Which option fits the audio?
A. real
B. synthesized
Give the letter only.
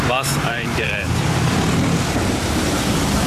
B